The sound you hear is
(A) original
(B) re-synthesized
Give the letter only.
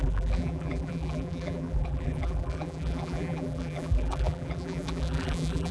B